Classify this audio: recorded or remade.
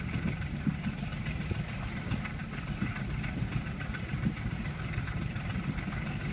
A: recorded